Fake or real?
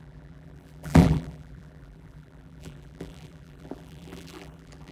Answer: fake